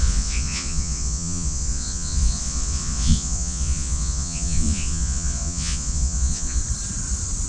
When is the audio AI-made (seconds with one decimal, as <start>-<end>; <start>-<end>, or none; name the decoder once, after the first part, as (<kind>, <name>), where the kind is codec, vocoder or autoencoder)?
0.0-6.6 (vocoder, Vocos)